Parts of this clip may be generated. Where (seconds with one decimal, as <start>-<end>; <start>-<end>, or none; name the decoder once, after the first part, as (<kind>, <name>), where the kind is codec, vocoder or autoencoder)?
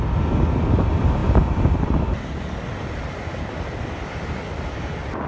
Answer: 1.2-2.0 (vocoder, BigVGAN v2)